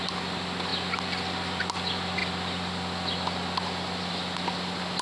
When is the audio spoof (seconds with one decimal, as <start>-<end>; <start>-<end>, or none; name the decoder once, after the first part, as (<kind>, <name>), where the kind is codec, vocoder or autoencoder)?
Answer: none